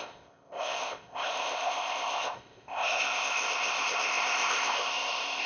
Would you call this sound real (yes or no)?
no